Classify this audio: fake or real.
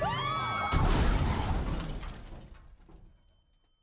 real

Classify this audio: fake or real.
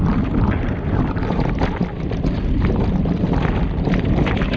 real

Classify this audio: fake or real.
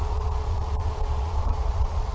fake